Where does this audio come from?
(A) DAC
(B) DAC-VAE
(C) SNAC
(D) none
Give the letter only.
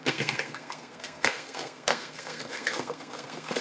C